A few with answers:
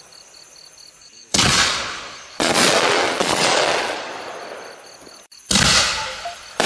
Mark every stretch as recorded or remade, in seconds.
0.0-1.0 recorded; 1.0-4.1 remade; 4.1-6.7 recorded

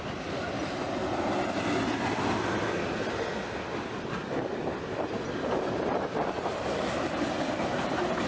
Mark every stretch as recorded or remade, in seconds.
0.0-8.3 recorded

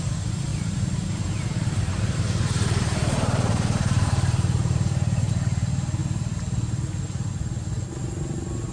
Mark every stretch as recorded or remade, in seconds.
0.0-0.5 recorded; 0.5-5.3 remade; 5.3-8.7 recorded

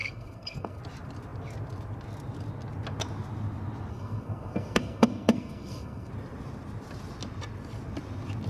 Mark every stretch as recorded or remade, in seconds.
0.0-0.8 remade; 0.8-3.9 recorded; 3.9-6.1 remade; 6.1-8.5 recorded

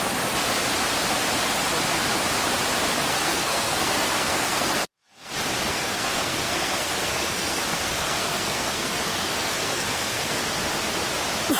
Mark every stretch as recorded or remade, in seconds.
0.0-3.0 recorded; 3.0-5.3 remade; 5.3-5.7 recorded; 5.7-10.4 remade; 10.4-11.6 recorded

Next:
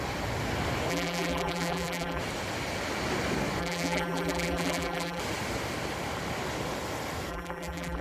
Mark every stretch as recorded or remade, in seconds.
0.0-0.9 recorded; 0.9-2.2 remade; 2.2-3.6 recorded; 3.6-5.2 remade; 5.2-7.3 recorded; 7.3-8.0 remade

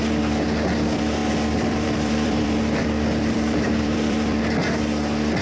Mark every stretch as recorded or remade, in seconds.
0.0-1.2 recorded; 1.2-4.4 remade; 4.4-5.4 recorded